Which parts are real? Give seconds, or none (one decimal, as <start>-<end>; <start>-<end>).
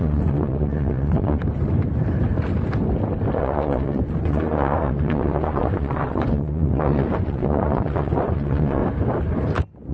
1.4-3.3; 8.8-9.9